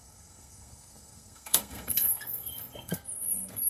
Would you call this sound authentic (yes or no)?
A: no